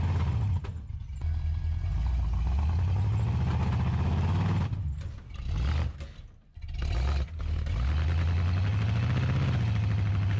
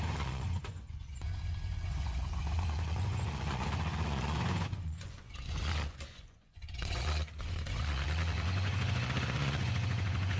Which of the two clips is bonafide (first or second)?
first